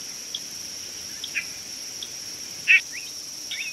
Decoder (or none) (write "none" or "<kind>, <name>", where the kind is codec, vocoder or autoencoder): none